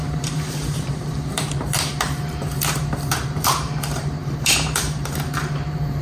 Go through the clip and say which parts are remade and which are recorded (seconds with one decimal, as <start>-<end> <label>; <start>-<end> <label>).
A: 0.0-6.0 remade